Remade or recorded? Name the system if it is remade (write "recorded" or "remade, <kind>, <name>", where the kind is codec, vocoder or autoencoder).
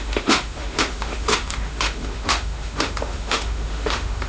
remade, autoencoder, DAC-VAE